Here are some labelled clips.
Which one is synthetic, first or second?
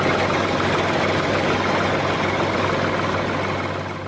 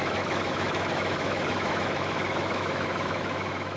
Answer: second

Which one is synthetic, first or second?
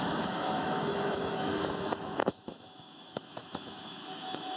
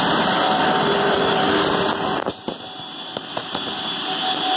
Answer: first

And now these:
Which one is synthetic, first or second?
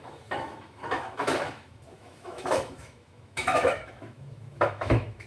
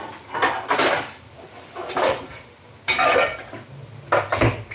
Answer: first